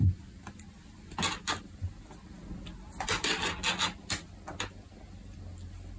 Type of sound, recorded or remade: recorded